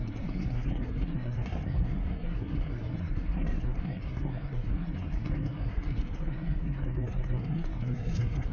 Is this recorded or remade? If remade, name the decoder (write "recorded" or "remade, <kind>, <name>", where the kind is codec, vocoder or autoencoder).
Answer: remade, codec, SNAC